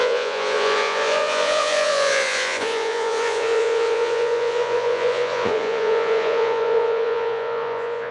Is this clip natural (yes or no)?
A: no